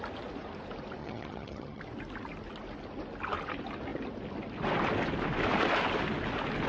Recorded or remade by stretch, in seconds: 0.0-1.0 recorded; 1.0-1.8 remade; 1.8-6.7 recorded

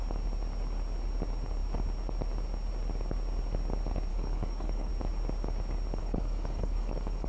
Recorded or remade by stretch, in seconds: 0.0-4.1 recorded; 4.1-4.9 remade; 4.9-6.0 recorded; 6.0-7.3 remade

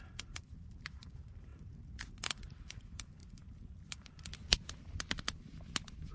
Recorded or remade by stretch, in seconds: 0.0-1.5 remade; 1.5-2.1 recorded; 2.1-3.2 remade; 3.2-6.1 recorded

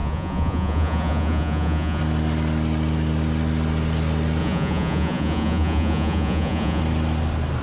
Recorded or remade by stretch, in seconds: 0.0-2.0 remade; 2.0-4.4 recorded; 4.4-6.8 remade; 6.8-7.6 recorded

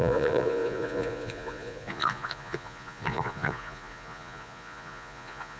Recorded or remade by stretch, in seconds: 0.0-5.6 remade

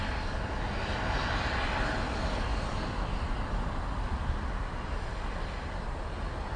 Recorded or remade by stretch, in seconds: 0.0-6.6 recorded